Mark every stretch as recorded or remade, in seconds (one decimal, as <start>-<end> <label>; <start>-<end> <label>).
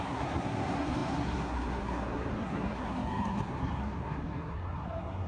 0.0-5.3 remade